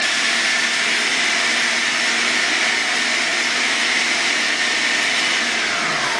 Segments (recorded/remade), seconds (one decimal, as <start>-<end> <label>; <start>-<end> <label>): 0.0-0.6 remade; 0.6-1.1 recorded; 1.1-2.4 remade; 2.4-6.2 recorded